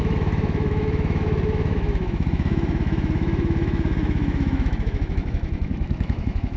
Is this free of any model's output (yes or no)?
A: no